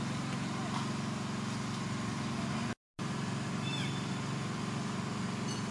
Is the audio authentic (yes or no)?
yes